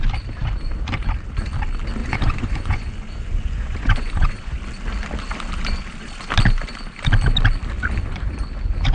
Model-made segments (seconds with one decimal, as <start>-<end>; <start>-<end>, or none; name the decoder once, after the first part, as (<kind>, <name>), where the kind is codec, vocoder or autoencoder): 2.0-4.6 (vocoder, Vocos)